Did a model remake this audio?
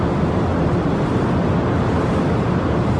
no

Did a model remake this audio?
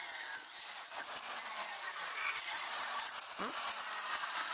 yes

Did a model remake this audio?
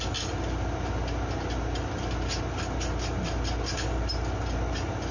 no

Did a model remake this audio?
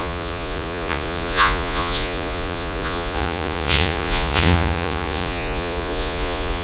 yes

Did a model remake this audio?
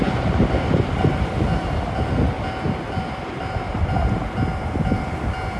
no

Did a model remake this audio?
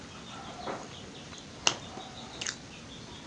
no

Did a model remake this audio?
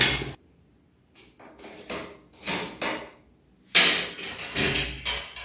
no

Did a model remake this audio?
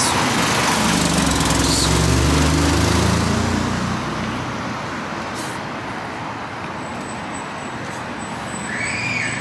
no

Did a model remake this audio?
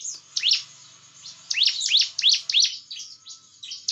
no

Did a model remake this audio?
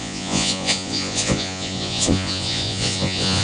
yes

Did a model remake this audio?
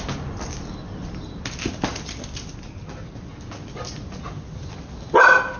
no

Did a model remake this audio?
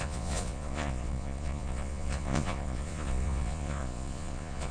yes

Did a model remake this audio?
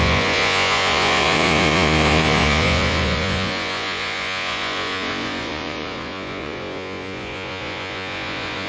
yes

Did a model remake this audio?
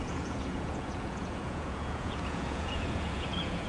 yes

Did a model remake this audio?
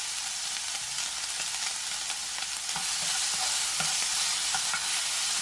no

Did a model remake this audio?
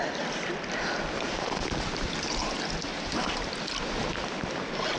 no